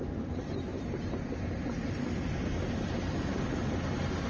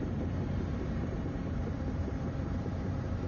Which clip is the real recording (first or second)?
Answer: first